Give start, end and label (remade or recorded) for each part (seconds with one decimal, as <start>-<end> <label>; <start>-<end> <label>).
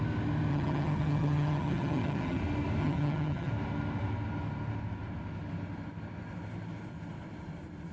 0.0-0.5 recorded; 0.5-2.4 remade; 2.4-2.8 recorded; 2.8-3.5 remade; 3.5-7.9 recorded